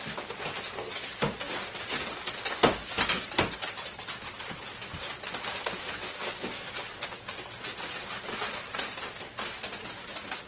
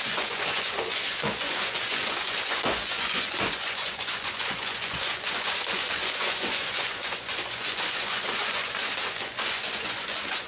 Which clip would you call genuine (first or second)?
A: first